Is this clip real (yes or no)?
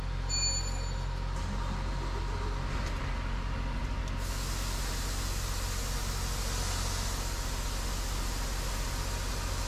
yes